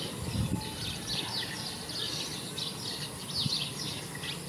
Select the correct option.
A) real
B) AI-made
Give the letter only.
A